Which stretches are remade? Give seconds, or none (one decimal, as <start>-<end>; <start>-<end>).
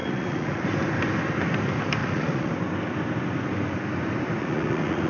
0.0-0.6; 2.0-2.5; 4.4-5.1